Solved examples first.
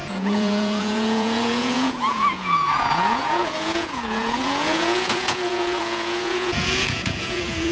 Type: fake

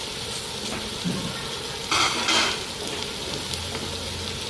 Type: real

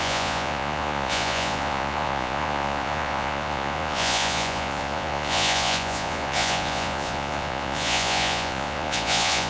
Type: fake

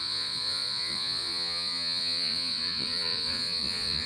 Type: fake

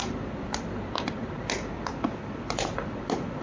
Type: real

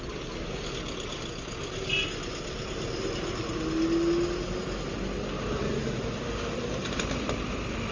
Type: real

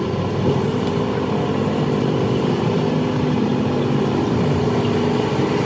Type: real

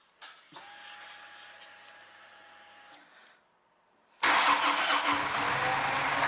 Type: real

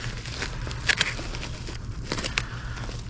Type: real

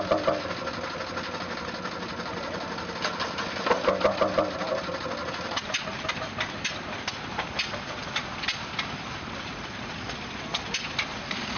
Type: real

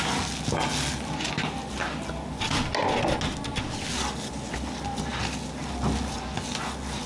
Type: real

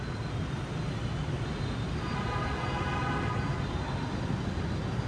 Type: real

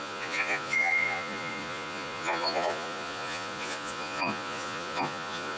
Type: fake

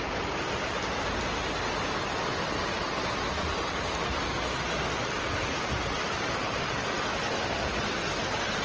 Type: real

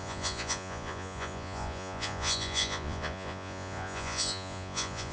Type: fake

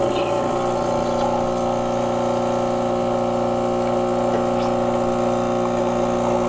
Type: real